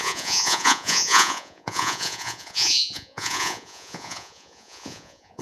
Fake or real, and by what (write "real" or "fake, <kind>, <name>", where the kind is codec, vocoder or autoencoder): fake, vocoder, Vocos